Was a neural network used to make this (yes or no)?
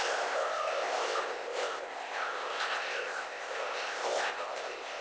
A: yes